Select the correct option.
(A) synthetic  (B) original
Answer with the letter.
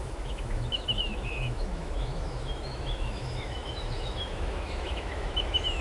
A